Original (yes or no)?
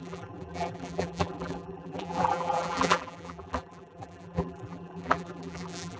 no